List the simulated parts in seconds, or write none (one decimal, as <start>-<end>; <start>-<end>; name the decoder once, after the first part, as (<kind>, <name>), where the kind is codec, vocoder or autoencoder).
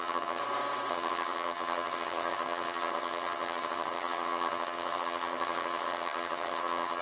0.0-0.4 (vocoder, HiFi-GAN); 0.9-7.0